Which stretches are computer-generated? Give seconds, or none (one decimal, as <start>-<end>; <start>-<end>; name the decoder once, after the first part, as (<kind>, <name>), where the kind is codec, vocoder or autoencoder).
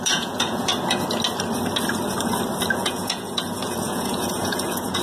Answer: 0.0-0.7 (vocoder, Vocos); 2.8-5.0